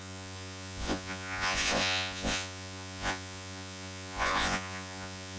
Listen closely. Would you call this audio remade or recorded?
remade